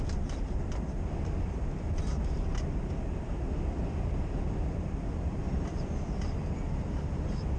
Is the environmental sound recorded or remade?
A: recorded